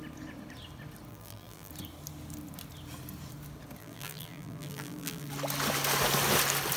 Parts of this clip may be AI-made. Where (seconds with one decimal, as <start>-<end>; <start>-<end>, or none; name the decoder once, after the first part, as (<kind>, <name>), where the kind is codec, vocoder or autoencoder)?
1.1-1.7 (vocoder, BigVGAN v2); 3.8-5.3